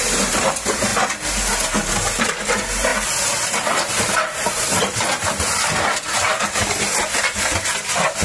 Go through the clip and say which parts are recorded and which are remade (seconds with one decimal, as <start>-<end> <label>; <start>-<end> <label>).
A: 0.0-0.9 remade; 0.9-2.2 recorded; 2.2-2.9 remade; 2.9-3.5 recorded; 3.5-6.3 remade; 6.3-7.0 recorded; 7.0-8.2 remade